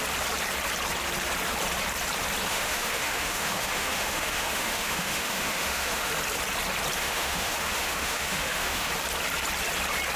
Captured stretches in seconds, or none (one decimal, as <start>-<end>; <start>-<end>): 0.0-2.5; 6.1-7.0; 8.9-10.2